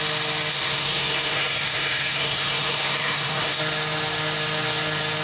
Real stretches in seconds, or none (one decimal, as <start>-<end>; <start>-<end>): 0.0-0.5; 3.6-5.2